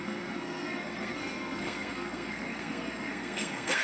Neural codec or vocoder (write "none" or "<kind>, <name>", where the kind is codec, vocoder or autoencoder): codec, SNAC